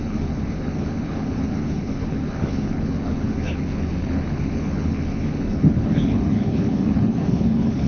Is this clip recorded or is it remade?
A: remade